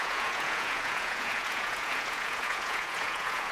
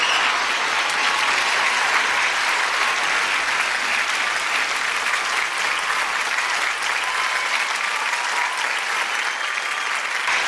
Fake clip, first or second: first